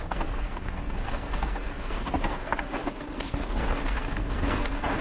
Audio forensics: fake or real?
fake